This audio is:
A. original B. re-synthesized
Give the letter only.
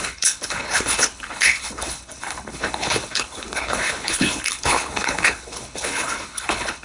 B